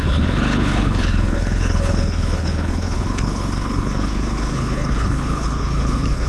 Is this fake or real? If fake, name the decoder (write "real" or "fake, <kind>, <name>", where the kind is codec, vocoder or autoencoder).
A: fake, codec, HILCodec